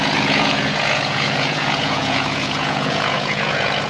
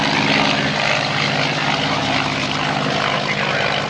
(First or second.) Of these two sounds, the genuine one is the second